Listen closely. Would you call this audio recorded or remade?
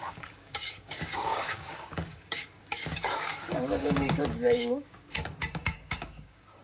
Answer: remade